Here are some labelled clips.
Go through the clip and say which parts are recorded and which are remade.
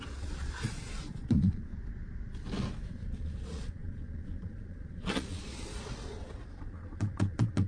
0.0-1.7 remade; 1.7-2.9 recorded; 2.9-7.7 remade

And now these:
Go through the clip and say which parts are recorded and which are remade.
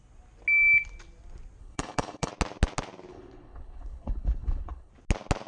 0.0-1.6 recorded; 1.6-2.3 remade; 2.3-3.1 recorded; 3.1-4.9 remade; 4.9-5.5 recorded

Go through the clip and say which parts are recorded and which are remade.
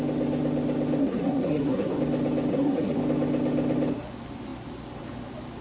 0.0-1.0 recorded; 1.0-2.0 remade; 2.0-2.5 recorded; 2.5-3.0 remade; 3.0-5.6 recorded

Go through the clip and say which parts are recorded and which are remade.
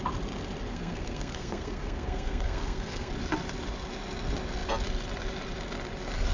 0.0-0.7 recorded; 0.7-3.1 remade; 3.1-6.3 recorded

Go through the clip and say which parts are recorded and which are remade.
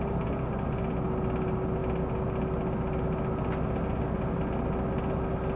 0.0-5.6 recorded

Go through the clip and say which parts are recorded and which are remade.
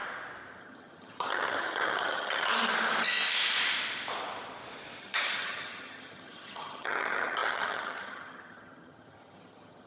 0.0-0.6 recorded; 0.6-2.5 remade; 2.5-5.0 recorded; 5.0-9.9 remade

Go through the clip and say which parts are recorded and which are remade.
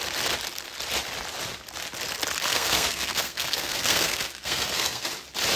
0.0-2.5 recorded; 2.5-5.1 remade; 5.1-5.6 recorded